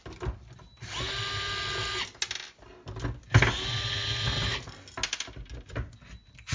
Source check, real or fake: real